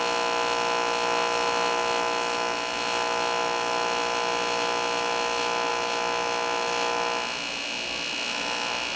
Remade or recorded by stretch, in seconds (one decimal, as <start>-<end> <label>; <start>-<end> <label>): 0.0-9.0 recorded